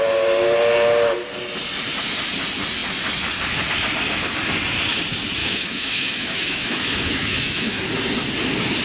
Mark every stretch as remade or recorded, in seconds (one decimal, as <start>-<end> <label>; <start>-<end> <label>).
0.0-5.4 recorded; 5.4-7.8 remade; 7.8-8.8 recorded